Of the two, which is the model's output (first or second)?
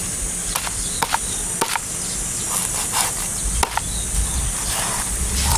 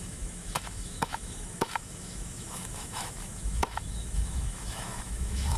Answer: second